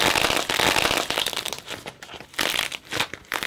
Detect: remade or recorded recorded